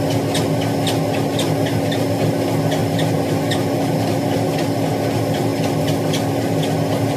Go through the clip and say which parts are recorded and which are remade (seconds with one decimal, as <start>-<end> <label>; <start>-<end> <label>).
0.0-7.2 recorded